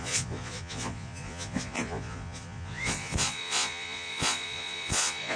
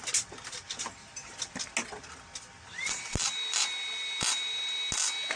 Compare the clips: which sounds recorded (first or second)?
second